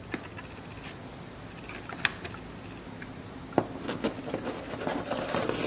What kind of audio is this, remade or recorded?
recorded